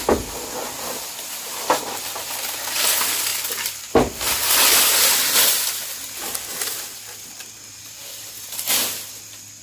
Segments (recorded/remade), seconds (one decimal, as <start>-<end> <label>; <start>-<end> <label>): 0.0-9.6 recorded